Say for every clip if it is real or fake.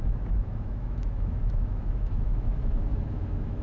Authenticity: fake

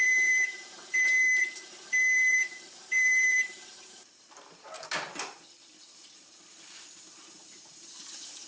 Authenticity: fake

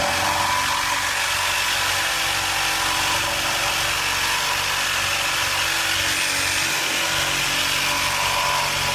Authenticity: real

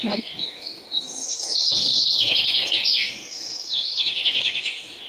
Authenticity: fake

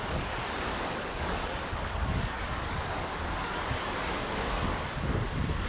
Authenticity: fake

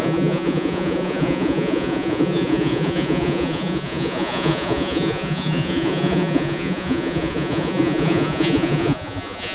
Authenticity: fake